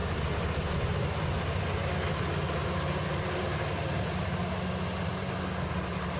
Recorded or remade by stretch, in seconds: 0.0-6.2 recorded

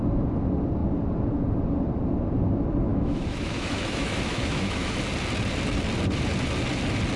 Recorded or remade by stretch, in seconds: 0.0-2.9 recorded; 2.9-4.9 remade; 4.9-7.2 recorded

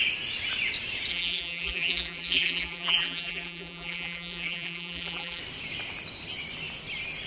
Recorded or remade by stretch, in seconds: 0.0-1.1 recorded; 1.1-5.4 remade; 5.4-7.3 recorded